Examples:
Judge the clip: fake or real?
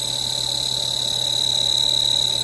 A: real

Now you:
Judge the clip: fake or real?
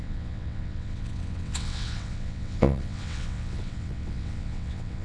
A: fake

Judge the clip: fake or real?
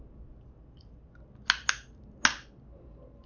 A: real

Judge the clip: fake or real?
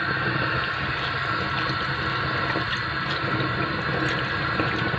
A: real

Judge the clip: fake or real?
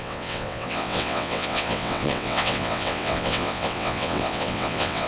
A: fake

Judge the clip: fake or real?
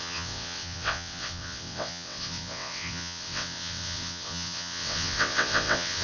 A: fake